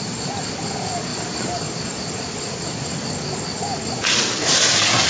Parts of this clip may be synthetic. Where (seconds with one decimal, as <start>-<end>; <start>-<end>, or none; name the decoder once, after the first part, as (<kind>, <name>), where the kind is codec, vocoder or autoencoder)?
none